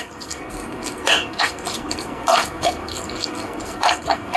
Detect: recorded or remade remade